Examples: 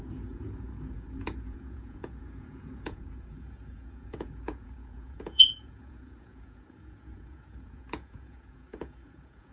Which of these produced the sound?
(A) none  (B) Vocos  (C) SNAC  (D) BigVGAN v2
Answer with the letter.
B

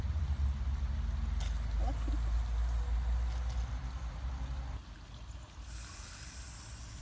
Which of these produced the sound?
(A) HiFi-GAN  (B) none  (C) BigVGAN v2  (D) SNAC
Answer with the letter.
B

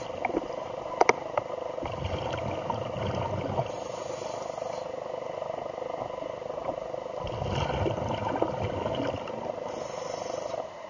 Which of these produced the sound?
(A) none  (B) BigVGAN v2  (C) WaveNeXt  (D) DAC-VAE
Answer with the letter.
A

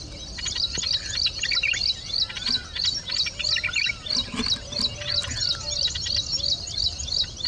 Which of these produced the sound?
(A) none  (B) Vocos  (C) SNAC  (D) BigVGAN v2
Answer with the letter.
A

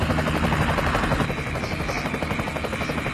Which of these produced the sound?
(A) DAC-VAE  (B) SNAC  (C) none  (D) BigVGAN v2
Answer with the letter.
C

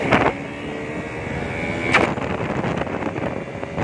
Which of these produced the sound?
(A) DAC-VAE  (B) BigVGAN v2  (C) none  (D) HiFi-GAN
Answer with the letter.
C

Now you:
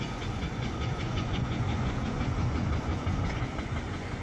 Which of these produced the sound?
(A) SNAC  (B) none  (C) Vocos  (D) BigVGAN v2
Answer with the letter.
C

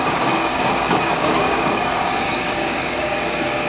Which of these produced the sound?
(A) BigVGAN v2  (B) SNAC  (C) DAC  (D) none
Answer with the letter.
C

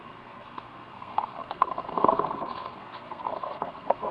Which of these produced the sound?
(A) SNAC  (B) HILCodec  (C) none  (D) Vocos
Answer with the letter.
A